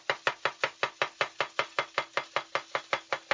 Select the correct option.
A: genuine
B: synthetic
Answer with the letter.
A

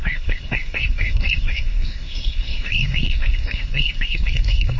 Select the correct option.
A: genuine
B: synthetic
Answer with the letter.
B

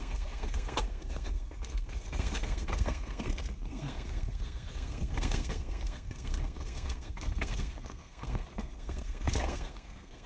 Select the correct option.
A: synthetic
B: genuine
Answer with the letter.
A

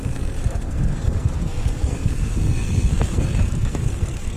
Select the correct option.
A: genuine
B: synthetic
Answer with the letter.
B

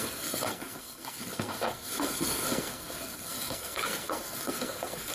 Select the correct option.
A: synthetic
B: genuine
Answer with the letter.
A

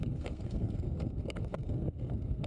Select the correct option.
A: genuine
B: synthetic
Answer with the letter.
B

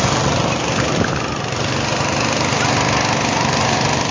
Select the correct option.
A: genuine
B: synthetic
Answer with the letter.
A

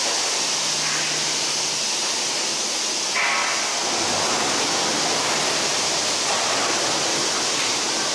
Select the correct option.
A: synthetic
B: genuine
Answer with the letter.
B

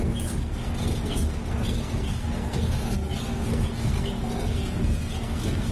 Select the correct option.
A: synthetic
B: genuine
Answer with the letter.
A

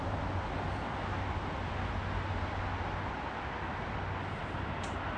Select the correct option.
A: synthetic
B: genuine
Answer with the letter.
B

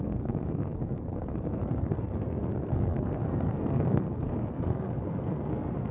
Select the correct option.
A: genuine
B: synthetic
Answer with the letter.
B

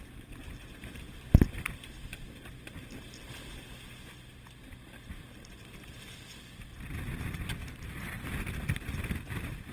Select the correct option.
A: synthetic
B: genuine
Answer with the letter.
B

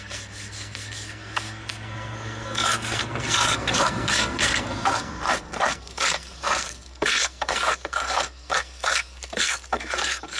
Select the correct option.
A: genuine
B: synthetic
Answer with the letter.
B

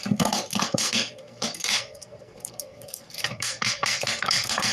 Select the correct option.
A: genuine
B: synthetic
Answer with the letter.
B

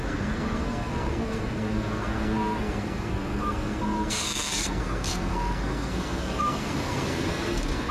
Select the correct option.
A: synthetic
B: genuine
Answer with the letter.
A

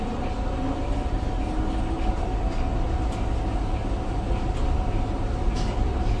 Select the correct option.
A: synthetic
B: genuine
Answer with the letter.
B